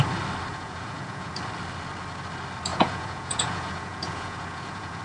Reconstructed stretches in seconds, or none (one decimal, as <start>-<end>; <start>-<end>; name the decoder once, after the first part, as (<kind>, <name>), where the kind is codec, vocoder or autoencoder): 0.5-1.3 (vocoder, Vocos); 2.7-5.0